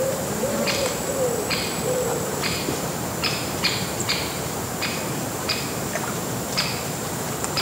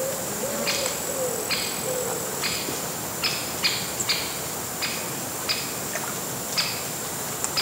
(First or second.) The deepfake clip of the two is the first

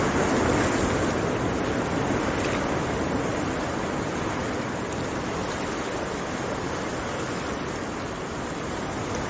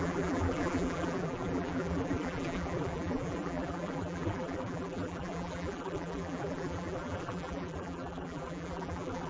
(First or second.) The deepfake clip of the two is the second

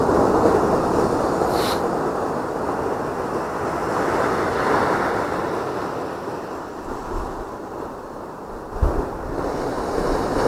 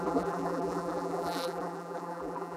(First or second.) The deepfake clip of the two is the second